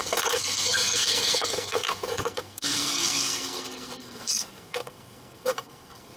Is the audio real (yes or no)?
no